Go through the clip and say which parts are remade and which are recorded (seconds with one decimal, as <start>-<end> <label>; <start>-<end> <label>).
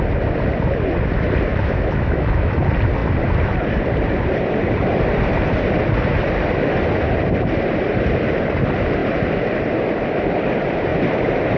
0.0-1.5 recorded; 1.5-2.6 remade; 2.6-11.6 recorded